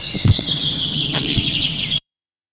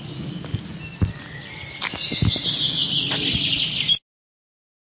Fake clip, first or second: first